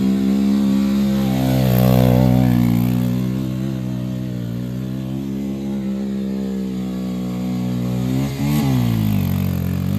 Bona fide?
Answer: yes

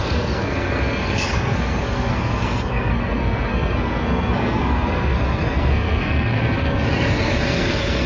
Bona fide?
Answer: no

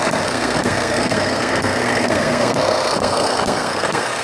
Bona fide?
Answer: no